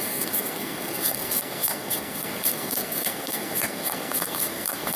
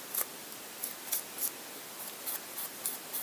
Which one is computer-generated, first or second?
first